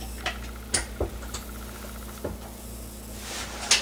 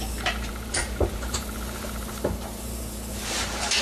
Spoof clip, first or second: second